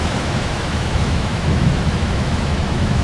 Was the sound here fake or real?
fake